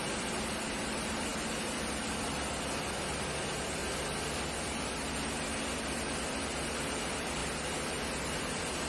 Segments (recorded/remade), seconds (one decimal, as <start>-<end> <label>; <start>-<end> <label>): 0.0-3.8 remade; 3.8-5.1 recorded; 5.1-7.4 remade; 7.4-8.4 recorded; 8.4-8.9 remade